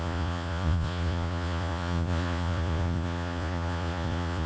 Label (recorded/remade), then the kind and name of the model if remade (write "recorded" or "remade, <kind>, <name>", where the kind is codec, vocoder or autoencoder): remade, vocoder, Vocos